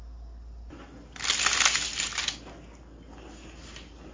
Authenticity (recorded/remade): recorded